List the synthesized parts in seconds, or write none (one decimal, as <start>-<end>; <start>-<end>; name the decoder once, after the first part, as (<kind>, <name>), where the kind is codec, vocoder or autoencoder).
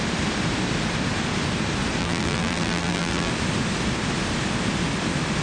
2.0-3.3 (vocoder, BigVGAN v2)